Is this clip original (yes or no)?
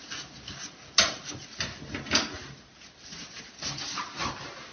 yes